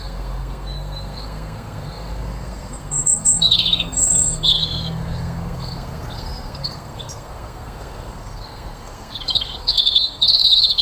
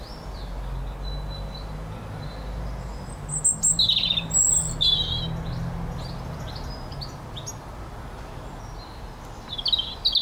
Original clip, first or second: second